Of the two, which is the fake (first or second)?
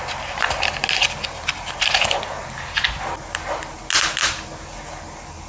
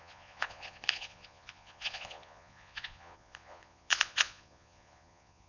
second